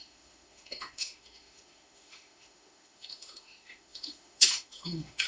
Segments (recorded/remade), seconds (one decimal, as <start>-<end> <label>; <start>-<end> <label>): 0.0-5.3 remade